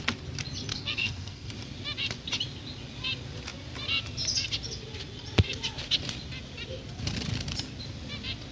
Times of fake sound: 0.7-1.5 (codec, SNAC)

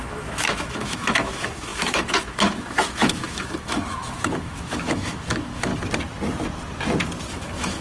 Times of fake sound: 0.0-5.7 (autoencoder, DAC-VAE); 7.3-7.8

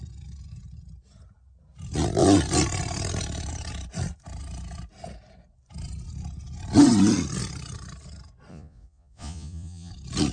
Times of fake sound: 8.5-9.9 (vocoder, Vocos)

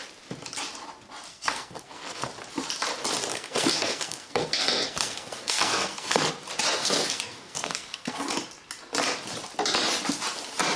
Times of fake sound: 1.3-2.3 (codec, SNAC); 3.3-6.3; 6.8-8.3

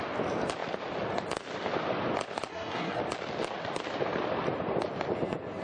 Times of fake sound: 2.5-3.0 (codec, SNAC)

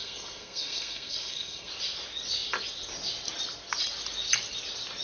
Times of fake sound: 0.0-1.7 (codec, SNAC)

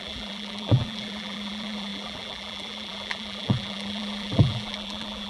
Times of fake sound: 0.0-5.3 (vocoder, BigVGAN v2)